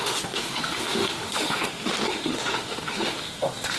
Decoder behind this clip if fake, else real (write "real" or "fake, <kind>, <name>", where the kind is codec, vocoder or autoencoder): fake, autoencoder, DAC-VAE